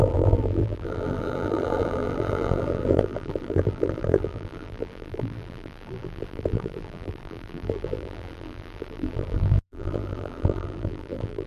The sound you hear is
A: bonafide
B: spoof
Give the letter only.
B